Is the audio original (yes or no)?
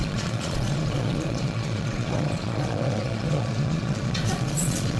no